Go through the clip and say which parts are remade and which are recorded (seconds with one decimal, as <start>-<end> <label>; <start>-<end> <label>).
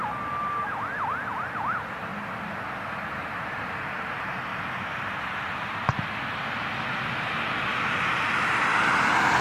0.0-9.4 recorded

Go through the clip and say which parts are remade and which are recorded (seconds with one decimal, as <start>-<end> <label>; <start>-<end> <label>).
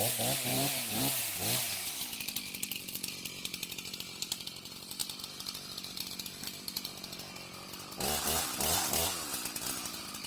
0.0-0.5 recorded; 0.5-1.0 remade; 1.0-10.3 recorded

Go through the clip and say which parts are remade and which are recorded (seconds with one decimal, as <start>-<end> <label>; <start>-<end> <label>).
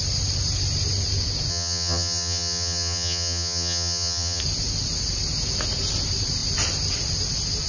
0.0-1.5 recorded; 1.5-4.4 remade; 4.4-7.7 recorded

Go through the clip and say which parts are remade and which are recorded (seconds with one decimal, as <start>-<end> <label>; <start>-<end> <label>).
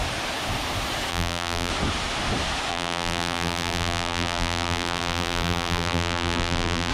0.0-1.1 recorded; 1.1-1.7 remade; 1.7-2.7 recorded; 2.7-6.9 remade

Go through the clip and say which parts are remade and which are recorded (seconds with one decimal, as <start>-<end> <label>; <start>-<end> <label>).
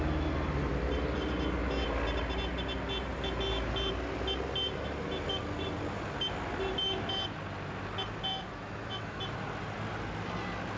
0.0-8.3 recorded; 8.3-9.2 remade; 9.2-10.8 recorded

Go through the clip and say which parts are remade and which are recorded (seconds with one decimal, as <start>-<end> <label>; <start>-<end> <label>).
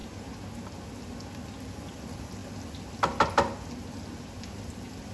0.0-5.1 recorded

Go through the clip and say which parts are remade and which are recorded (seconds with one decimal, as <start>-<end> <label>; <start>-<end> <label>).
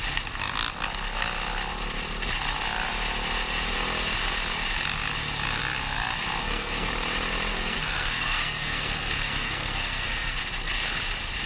0.0-6.4 recorded; 6.4-6.9 remade; 6.9-7.5 recorded; 7.5-10.4 remade; 10.4-11.5 recorded